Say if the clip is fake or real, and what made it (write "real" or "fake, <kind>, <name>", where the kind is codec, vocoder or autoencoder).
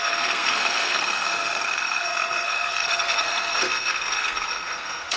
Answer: fake, codec, SNAC